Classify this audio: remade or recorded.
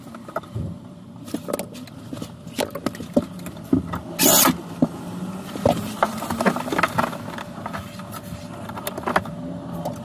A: recorded